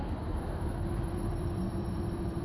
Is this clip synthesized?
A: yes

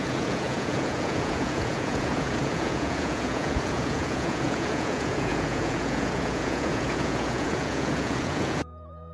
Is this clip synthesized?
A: yes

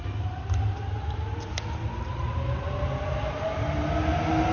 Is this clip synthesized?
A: no